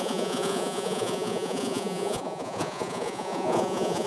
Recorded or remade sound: remade